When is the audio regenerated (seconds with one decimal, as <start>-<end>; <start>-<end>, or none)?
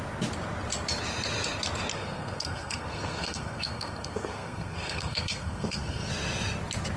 1.9-6.1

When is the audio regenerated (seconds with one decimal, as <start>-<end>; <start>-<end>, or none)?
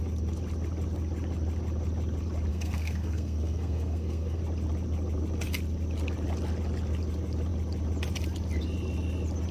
2.5-4.4